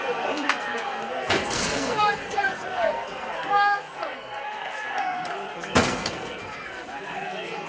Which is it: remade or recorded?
remade